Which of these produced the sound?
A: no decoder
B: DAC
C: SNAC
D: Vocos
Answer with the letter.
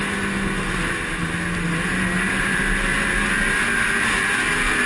A